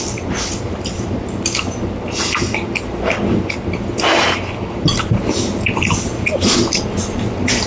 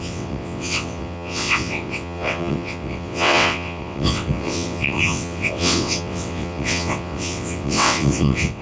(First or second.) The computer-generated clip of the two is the second